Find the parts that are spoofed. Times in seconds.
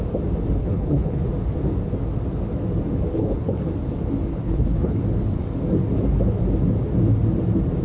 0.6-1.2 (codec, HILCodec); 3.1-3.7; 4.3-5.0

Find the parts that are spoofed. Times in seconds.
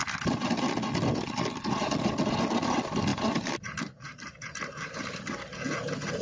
3.1-5.2 (vocoder, BigVGAN v2)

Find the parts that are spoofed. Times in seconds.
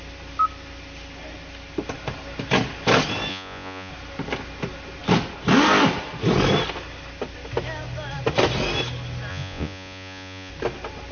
3.3-3.9 (vocoder, Vocos); 9.3-10.5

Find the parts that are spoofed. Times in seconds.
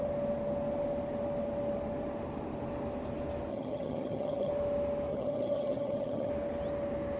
3.5-4.5 (vocoder, HiFi-GAN); 5.1-6.3